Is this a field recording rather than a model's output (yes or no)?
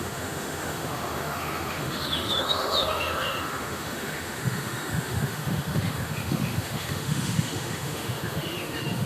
no